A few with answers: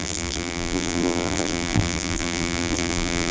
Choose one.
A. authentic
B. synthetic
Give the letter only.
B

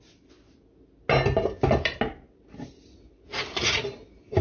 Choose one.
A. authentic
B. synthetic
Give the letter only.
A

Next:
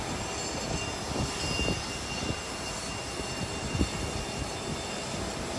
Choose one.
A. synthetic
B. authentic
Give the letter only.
B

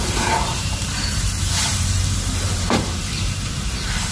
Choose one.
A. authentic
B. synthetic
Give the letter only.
B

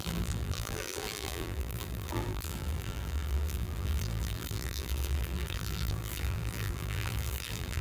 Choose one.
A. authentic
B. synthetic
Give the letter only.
B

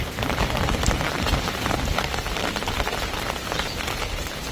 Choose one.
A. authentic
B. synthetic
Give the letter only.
B